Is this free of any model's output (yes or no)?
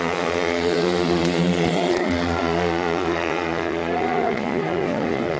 no